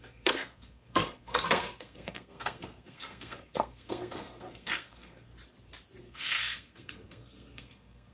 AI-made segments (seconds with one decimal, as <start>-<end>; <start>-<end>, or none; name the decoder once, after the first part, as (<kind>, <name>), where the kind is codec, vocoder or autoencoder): 0.0-5.3 (codec, SNAC); 6.0-8.1